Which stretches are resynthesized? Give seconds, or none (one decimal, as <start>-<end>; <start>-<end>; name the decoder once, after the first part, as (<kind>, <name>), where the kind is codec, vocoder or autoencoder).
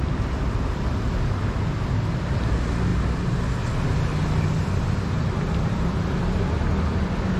none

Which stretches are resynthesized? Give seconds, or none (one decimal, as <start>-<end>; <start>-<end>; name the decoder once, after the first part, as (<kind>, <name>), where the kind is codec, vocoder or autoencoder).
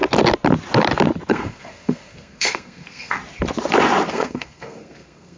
1.3-3.2 (codec, SNAC); 4.1-5.4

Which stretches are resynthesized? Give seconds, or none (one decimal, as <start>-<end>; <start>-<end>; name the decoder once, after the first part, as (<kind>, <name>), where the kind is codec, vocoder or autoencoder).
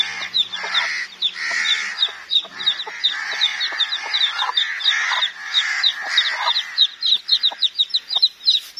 2.5-3.1 (vocoder, BigVGAN v2)